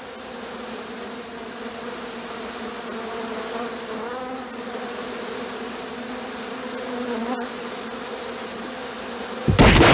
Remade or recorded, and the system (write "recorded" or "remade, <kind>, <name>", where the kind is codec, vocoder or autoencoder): recorded